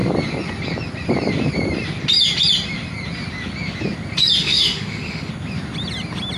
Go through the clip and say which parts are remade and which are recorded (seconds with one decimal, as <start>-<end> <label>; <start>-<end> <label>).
0.0-4.4 recorded; 4.4-5.3 remade; 5.3-6.4 recorded